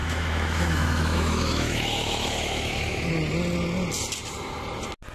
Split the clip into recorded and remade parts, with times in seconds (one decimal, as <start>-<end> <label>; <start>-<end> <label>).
0.0-3.1 remade; 3.1-5.1 recorded